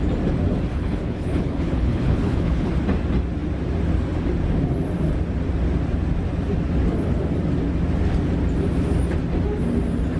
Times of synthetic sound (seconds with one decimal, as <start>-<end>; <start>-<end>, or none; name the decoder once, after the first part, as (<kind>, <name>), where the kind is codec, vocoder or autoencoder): 0.7-2.7 (codec, HILCodec)